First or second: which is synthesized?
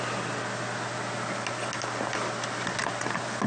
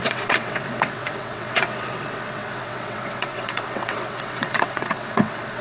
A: second